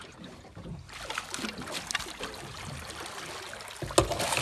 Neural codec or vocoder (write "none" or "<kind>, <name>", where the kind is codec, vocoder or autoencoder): none